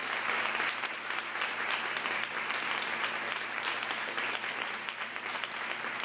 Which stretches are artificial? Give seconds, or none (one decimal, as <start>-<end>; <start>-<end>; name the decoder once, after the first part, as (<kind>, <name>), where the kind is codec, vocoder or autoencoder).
none